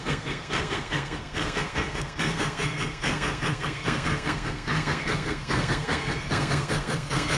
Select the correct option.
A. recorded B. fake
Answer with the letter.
B